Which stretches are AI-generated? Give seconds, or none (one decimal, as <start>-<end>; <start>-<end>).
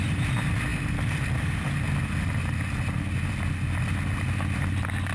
none